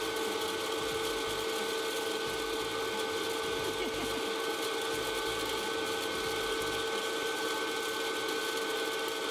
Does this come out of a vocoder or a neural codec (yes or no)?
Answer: no